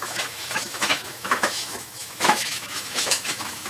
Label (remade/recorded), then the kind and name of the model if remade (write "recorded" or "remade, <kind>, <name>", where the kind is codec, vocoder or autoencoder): remade, autoencoder, DAC-VAE